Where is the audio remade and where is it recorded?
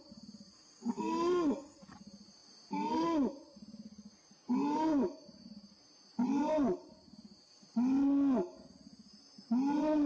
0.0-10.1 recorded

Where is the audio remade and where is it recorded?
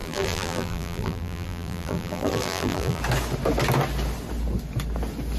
0.0-3.0 remade; 3.0-5.4 recorded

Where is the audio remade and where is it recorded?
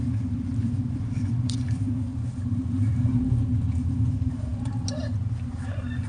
0.0-2.1 remade; 2.1-3.9 recorded; 3.9-4.5 remade; 4.5-5.2 recorded; 5.2-6.1 remade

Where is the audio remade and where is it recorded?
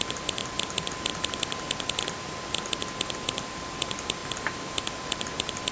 0.0-4.2 recorded; 4.2-4.9 remade; 4.9-5.7 recorded